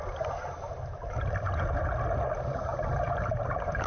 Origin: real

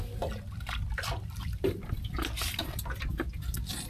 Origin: real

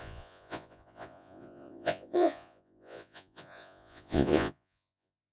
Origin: fake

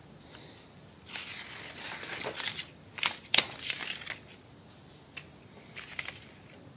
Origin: fake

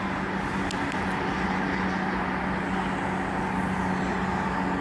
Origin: real